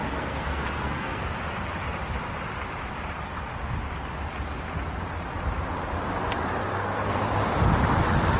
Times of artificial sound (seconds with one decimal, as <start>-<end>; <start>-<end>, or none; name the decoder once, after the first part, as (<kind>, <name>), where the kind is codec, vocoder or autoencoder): 0.0-1.3 (codec, SNAC); 6.6-7.2